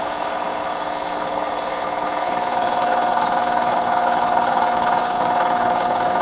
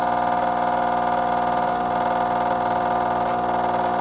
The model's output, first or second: first